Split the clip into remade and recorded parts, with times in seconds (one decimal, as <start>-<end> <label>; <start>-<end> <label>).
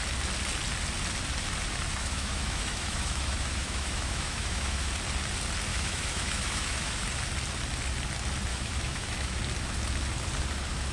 0.0-2.0 recorded; 2.0-4.9 remade; 4.9-5.7 recorded; 5.7-7.0 remade; 7.0-8.5 recorded; 8.5-9.4 remade; 9.4-10.9 recorded